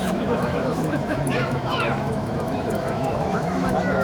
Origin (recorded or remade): remade